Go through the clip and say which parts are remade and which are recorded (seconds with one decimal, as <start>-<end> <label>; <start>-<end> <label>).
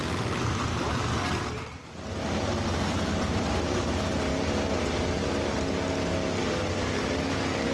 0.0-7.7 recorded